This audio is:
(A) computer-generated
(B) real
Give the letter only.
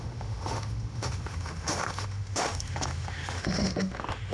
A